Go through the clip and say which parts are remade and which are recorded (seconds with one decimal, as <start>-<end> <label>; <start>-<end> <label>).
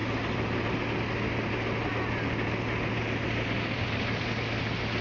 0.0-5.0 recorded